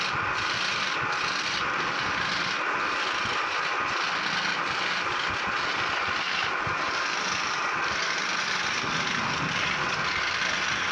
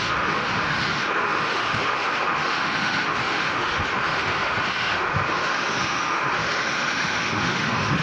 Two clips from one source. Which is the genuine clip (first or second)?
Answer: first